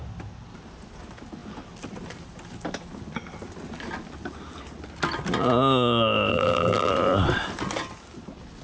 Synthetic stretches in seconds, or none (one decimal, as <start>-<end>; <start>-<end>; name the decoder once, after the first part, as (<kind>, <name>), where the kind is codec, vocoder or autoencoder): 6.3-6.9 (vocoder, BigVGAN v2)